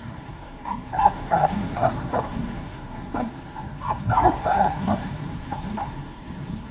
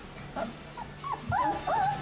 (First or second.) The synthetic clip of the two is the first